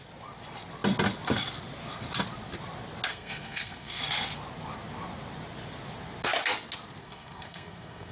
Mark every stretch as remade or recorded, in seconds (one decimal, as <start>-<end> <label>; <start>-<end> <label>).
0.0-3.1 recorded; 3.1-4.0 remade; 4.0-7.0 recorded; 7.0-8.1 remade